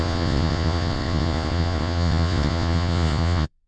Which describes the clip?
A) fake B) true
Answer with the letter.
A